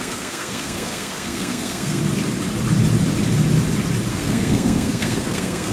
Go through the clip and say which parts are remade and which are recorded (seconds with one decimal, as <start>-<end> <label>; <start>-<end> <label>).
0.0-2.0 remade; 2.0-4.1 recorded; 4.1-5.7 remade